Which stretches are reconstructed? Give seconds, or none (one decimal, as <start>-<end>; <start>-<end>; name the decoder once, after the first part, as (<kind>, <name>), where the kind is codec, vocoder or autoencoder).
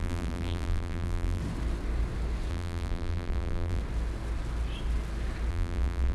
0.0-1.4 (vocoder, BigVGAN v2); 2.5-3.8; 5.5-6.1